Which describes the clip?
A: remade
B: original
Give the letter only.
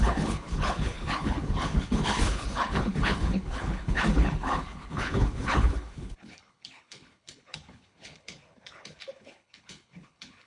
A